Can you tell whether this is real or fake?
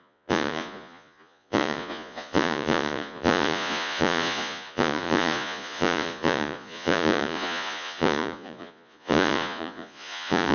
fake